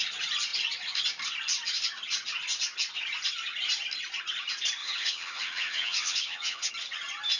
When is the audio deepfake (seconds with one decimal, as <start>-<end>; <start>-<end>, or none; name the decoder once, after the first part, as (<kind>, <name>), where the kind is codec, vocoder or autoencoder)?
4.8-6.7 (vocoder, HiFi-GAN)